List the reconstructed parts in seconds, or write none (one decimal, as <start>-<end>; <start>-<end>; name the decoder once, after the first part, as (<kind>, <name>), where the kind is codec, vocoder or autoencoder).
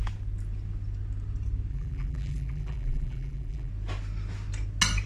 1.7-3.7 (vocoder, BigVGAN v2)